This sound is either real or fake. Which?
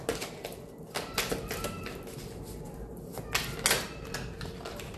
real